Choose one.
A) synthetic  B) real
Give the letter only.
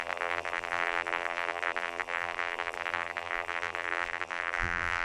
A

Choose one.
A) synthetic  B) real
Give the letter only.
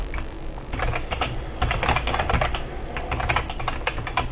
B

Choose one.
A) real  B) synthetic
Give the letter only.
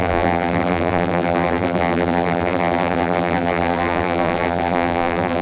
B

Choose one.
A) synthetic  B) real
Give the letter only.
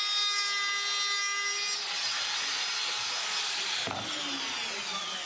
B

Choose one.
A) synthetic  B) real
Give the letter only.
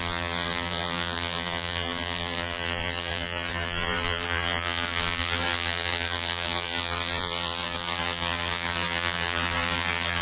A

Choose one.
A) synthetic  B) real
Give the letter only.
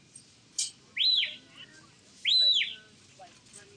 B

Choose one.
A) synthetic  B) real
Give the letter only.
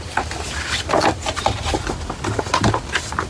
B